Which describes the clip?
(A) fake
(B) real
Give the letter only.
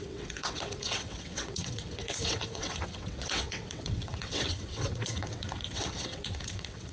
A